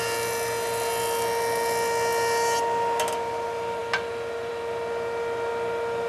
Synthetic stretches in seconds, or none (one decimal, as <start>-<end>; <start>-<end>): none